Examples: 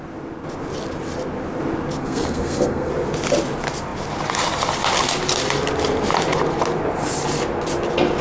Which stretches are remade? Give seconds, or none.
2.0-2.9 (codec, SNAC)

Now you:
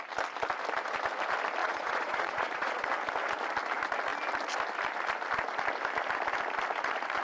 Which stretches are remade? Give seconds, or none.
1.6-2.8 (vocoder, Vocos)

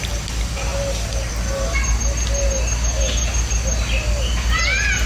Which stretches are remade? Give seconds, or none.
none

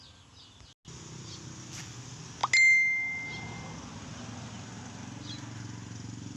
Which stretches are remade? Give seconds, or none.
none

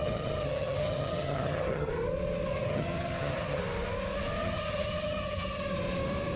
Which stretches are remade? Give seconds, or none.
0.0-1.9 (vocoder, HiFi-GAN); 2.5-3.6; 4.4-5.6

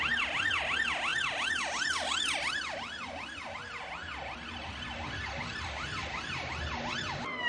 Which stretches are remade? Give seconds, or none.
none

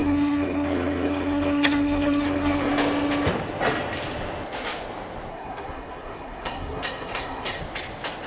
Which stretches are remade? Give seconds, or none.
0.0-2.7 (codec, SNAC); 5.3-7.6